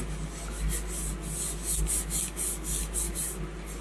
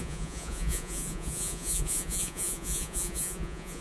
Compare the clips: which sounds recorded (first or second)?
first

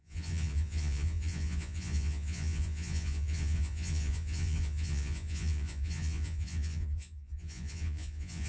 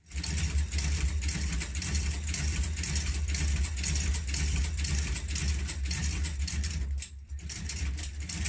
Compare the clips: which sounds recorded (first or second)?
second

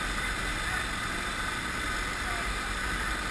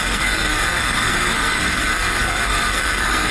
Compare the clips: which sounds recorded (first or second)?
first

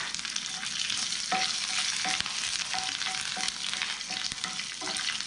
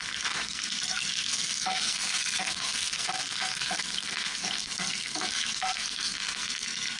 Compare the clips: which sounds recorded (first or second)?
first